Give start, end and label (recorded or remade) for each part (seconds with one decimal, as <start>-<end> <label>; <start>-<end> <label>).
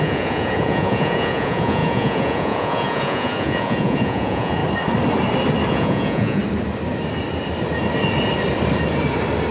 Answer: 0.0-4.6 remade; 4.6-5.7 recorded; 5.7-6.4 remade; 6.4-9.5 recorded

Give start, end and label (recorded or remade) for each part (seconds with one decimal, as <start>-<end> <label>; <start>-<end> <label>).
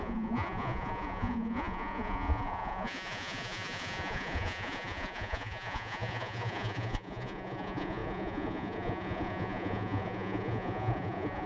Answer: 0.0-11.5 remade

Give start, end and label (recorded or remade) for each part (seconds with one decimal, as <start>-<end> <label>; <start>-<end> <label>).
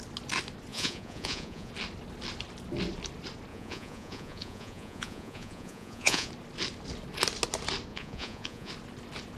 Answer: 0.0-0.7 recorded; 0.7-1.7 remade; 1.7-3.5 recorded; 3.5-6.3 remade; 6.3-7.9 recorded; 7.9-8.7 remade; 8.7-9.4 recorded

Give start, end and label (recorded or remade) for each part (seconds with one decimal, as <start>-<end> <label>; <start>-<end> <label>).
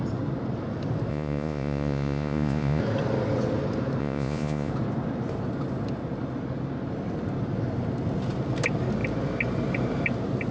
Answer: 0.0-1.1 recorded; 1.1-2.8 remade; 2.8-4.0 recorded; 4.0-4.7 remade; 4.7-10.5 recorded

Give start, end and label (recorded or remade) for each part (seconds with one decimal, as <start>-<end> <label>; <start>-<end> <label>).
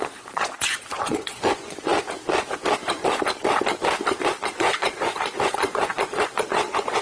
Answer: 0.0-1.9 remade; 1.9-4.2 recorded; 4.2-7.0 remade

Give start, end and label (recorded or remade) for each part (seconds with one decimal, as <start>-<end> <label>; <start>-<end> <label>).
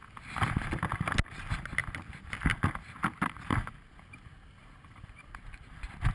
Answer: 0.0-6.1 recorded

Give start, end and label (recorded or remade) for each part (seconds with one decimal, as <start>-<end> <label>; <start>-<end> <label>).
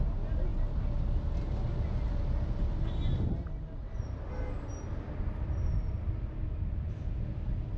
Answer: 0.0-7.8 recorded